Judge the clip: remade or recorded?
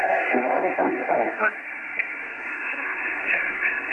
remade